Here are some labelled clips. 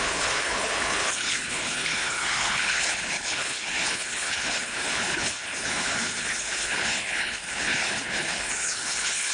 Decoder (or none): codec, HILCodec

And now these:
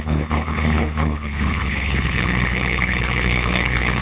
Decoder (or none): codec, HILCodec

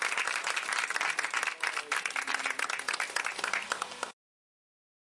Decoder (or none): none